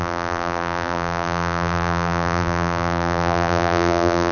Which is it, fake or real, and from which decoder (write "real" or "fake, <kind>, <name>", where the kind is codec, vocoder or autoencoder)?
fake, vocoder, BigVGAN v2